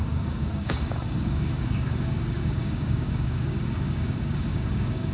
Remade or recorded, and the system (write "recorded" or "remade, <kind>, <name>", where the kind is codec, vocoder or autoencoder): remade, codec, DAC